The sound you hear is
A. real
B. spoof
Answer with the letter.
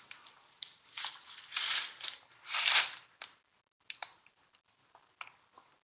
A